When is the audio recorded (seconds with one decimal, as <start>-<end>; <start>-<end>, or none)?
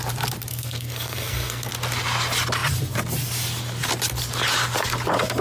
0.0-0.5; 1.7-5.4